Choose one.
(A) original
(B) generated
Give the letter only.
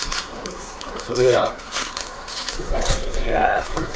B